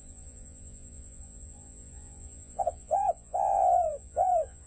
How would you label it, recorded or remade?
remade